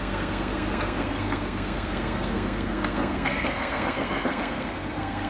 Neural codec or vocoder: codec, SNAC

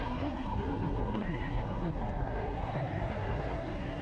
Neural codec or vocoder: codec, SNAC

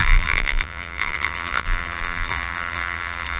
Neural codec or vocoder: vocoder, BigVGAN v2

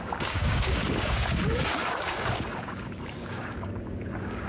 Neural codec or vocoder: codec, DAC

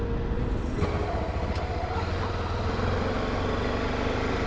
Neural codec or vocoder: none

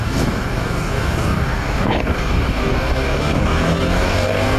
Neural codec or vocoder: codec, DAC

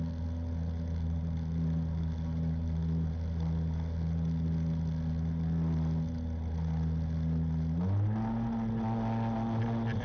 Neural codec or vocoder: none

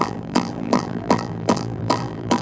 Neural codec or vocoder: vocoder, BigVGAN v2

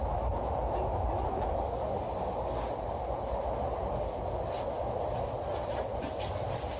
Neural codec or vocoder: none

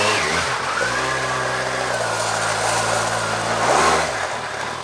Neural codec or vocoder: none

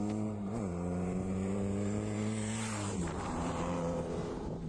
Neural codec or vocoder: vocoder, BigVGAN v2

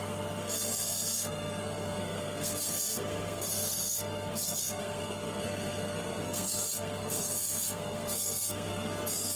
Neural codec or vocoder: codec, SNAC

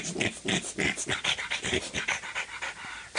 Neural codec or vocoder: none